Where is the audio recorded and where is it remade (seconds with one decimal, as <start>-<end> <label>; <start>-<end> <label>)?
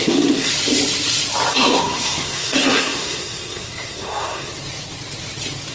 0.0-0.5 remade; 0.5-1.5 recorded; 1.5-4.5 remade; 4.5-5.7 recorded